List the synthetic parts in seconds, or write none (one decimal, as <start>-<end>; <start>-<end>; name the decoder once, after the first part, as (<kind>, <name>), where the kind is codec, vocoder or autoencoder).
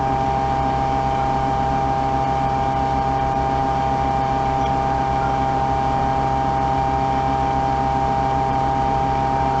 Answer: none